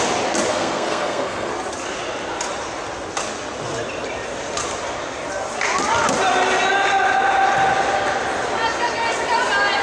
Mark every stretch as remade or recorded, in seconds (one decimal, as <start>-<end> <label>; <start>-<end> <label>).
0.0-0.5 recorded; 0.5-1.5 remade; 1.5-9.8 recorded